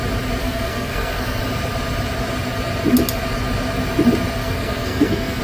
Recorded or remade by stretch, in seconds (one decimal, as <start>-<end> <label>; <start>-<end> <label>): 0.0-0.4 recorded; 0.4-1.4 remade; 1.4-4.4 recorded; 4.4-5.4 remade